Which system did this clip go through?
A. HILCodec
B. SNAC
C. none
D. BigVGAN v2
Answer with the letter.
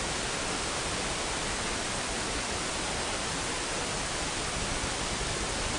C